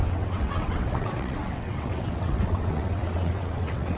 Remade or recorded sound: remade